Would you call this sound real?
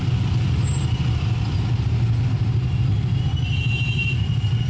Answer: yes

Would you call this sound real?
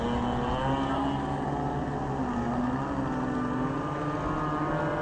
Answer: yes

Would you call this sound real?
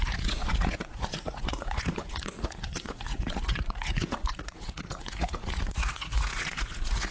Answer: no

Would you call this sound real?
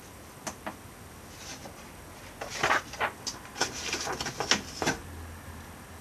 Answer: yes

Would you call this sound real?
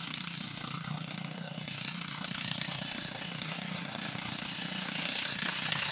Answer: no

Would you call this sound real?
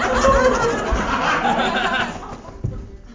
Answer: yes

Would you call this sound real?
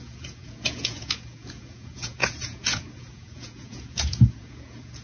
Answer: no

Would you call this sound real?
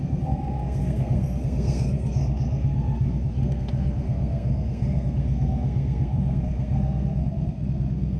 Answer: no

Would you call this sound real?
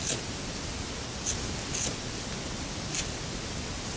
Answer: yes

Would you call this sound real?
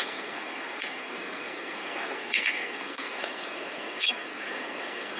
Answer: no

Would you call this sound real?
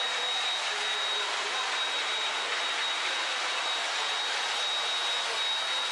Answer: yes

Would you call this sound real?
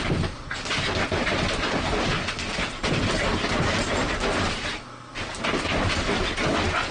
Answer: yes